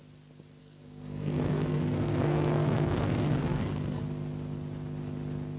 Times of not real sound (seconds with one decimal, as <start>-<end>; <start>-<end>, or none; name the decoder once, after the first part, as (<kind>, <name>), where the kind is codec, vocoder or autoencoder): 0.6-4.0 (codec, SNAC)

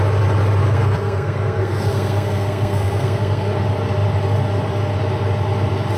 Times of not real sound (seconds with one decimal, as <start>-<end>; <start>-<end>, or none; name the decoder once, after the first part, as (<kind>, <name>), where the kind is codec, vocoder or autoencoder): 0.6-3.6 (codec, SNAC)

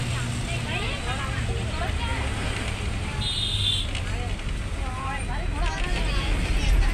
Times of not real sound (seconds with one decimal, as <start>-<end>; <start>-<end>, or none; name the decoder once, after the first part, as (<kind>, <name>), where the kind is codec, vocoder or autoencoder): none

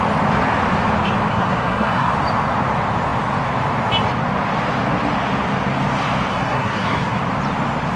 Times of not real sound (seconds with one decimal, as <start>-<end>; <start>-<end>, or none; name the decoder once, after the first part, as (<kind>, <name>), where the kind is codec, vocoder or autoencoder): 1.3-2.1 (codec, SNAC); 6.3-7.2

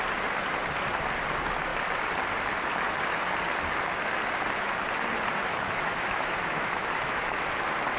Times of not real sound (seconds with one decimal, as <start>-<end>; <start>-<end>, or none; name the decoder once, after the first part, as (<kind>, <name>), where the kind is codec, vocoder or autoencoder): 5.5-7.2 (autoencoder, DAC-VAE)